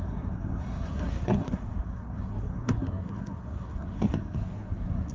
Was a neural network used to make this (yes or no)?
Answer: yes